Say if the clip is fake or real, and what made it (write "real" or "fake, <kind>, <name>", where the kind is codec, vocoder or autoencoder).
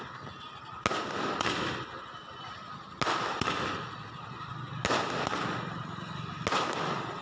real